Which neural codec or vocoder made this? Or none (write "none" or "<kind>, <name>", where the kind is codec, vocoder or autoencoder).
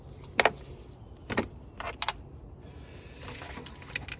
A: none